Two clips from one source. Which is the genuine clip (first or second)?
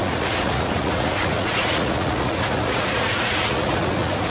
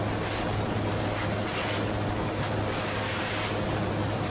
second